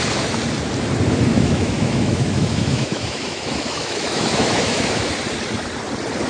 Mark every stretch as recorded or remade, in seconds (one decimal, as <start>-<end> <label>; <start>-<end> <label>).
0.0-1.3 recorded; 1.3-5.1 remade; 5.1-6.3 recorded